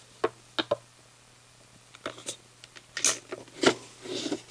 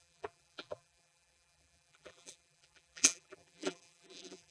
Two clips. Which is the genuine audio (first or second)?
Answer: first